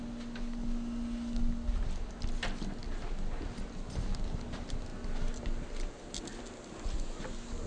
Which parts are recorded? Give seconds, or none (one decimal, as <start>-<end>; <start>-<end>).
0.0-7.7